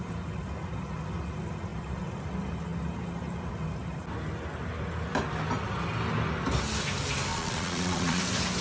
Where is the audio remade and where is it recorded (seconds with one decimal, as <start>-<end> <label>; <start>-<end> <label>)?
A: 0.0-7.3 recorded; 7.3-8.2 remade; 8.2-8.6 recorded